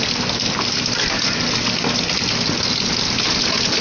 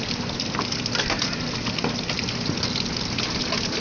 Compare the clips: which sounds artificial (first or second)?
second